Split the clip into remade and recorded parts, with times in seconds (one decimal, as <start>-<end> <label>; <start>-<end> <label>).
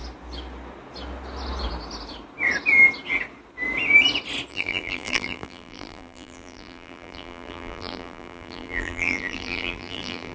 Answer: 0.0-4.5 recorded; 4.5-10.3 remade